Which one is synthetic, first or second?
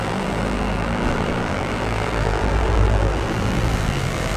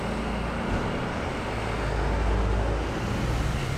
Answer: first